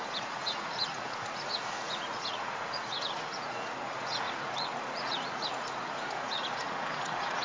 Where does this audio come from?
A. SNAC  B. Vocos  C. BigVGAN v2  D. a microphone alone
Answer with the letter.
B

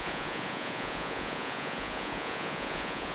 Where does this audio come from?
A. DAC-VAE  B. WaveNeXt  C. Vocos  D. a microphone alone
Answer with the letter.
C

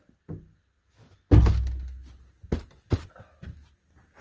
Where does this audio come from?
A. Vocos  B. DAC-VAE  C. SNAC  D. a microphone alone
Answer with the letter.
D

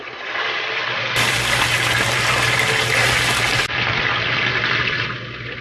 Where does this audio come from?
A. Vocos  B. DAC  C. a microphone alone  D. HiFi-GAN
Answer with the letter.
C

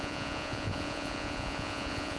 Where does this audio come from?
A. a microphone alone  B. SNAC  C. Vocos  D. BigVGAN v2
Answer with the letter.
C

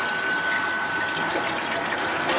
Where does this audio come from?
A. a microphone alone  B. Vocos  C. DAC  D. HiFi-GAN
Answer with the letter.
A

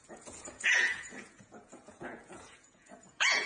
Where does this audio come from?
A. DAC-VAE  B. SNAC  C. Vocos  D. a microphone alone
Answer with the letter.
C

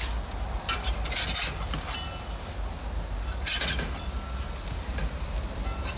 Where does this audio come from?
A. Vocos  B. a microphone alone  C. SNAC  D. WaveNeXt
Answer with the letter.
B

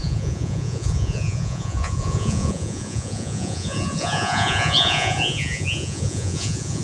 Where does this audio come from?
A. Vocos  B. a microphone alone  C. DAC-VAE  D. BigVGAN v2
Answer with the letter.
A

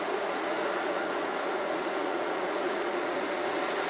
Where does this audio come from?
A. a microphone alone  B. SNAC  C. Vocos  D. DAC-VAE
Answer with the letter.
C